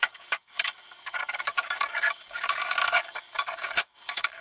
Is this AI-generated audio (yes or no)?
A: yes